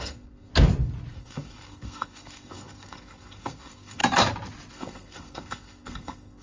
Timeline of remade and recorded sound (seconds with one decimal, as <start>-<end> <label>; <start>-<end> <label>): 0.0-0.5 remade; 0.5-1.1 recorded; 1.1-4.0 remade; 4.0-4.7 recorded; 4.7-6.4 remade

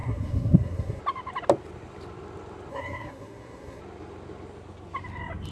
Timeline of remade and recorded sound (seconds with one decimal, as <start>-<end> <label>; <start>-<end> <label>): 0.0-1.0 remade; 1.0-2.7 recorded; 2.7-3.8 remade; 3.8-5.5 recorded

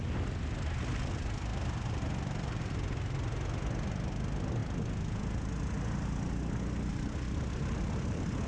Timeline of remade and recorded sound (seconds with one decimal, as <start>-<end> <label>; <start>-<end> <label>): 0.0-8.5 recorded

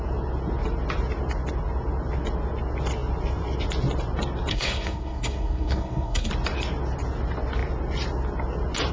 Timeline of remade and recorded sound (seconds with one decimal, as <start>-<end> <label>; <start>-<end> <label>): 0.0-4.5 recorded; 4.5-6.3 remade; 6.3-8.9 recorded

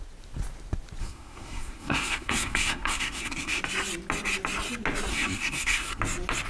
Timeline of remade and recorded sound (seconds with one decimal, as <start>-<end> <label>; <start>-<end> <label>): 0.0-1.0 recorded; 1.0-3.6 remade; 3.6-5.1 recorded; 5.1-6.0 remade; 6.0-6.5 recorded

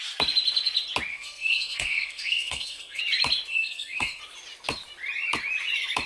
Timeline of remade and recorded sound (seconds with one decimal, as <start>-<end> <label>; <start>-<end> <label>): 0.0-1.1 recorded; 1.1-3.0 remade; 3.0-3.5 recorded; 3.5-4.2 remade; 4.2-6.1 recorded

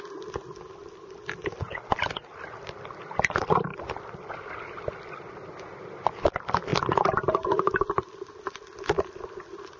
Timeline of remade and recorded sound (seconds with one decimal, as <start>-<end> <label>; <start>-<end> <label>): 0.0-9.8 recorded

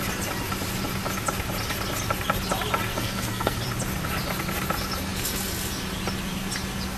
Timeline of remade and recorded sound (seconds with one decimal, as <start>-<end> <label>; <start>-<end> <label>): 0.0-2.9 recorded; 2.9-3.6 remade; 3.6-7.0 recorded